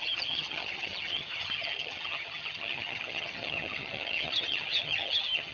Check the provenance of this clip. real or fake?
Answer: fake